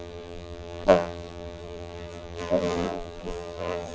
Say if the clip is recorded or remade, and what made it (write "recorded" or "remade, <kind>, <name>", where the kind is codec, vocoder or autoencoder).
remade, vocoder, BigVGAN v2